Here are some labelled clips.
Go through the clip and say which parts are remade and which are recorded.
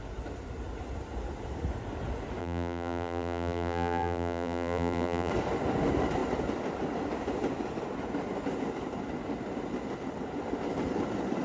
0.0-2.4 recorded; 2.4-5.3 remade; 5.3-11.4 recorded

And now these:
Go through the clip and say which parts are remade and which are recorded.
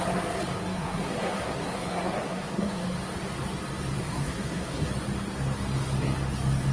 0.0-0.7 recorded; 0.7-2.8 remade; 2.8-4.0 recorded; 4.0-4.9 remade; 4.9-6.7 recorded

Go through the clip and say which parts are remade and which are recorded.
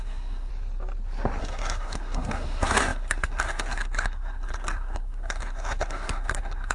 0.0-0.5 remade; 0.5-1.4 recorded; 1.4-6.7 remade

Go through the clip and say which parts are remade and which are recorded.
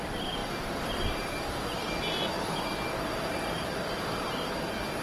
0.0-5.0 recorded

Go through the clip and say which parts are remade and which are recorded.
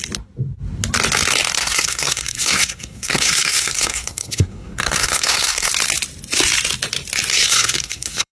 0.0-1.6 recorded; 1.6-5.7 remade; 5.7-7.3 recorded; 7.3-8.3 remade